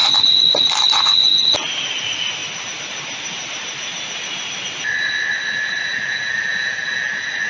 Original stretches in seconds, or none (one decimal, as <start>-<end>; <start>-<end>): 0.0-7.5